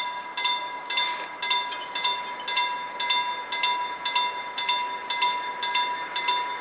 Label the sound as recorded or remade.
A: recorded